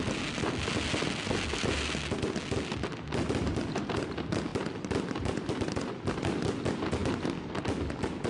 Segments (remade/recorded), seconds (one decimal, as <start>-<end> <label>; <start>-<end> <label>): 0.0-8.3 recorded